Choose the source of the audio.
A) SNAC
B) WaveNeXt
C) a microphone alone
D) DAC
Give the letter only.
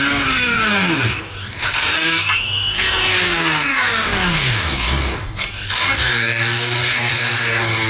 D